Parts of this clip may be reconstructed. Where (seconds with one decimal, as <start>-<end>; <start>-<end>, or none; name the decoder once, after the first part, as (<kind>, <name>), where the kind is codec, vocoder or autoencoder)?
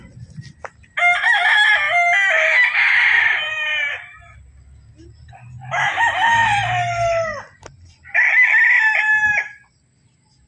none